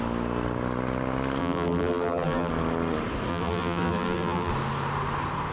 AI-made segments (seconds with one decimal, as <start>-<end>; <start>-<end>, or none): 1.4-2.5; 3.3-4.5